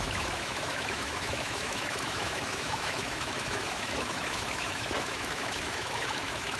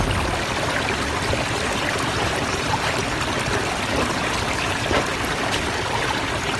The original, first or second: second